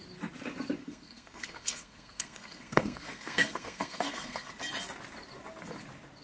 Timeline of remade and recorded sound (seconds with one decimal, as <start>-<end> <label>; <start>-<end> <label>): 0.0-0.8 recorded; 0.8-4.5 remade; 4.5-6.2 recorded